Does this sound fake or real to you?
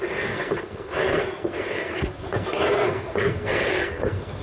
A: fake